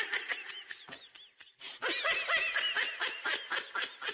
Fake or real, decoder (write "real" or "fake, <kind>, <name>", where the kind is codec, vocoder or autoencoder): real